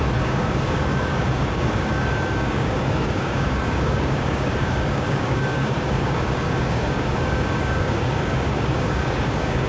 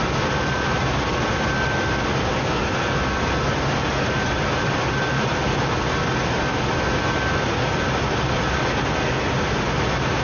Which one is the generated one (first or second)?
first